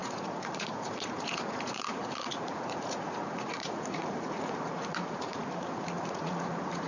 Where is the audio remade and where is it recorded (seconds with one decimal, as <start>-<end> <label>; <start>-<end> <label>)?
0.0-6.9 remade